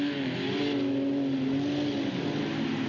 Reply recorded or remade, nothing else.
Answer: recorded